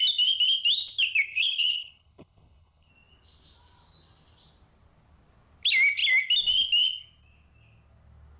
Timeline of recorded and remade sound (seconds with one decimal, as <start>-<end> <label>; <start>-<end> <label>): 0.0-1.3 recorded; 1.3-2.9 remade; 2.9-8.4 recorded